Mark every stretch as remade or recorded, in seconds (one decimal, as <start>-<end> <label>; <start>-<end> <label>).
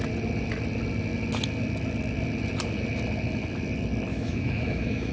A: 0.0-4.1 recorded; 4.1-5.1 remade